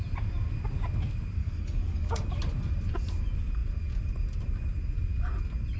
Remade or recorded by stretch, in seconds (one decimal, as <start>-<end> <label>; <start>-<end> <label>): 0.0-1.4 recorded; 1.4-2.3 remade; 2.3-5.8 recorded